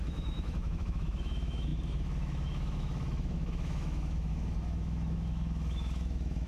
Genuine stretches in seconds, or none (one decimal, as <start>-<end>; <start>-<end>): none